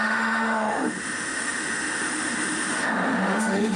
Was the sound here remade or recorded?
remade